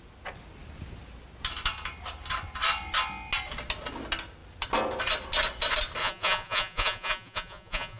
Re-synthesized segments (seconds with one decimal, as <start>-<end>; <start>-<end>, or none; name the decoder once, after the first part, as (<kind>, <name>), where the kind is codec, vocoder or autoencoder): 6.0-8.0 (vocoder, Vocos)